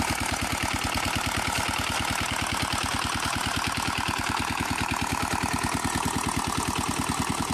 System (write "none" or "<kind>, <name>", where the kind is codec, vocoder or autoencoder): none